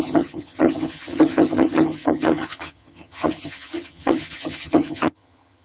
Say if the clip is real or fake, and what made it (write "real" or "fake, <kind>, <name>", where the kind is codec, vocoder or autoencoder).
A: fake, vocoder, HiFi-GAN